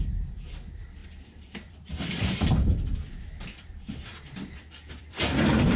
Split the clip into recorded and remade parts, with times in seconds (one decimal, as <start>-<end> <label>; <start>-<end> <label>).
0.0-5.8 remade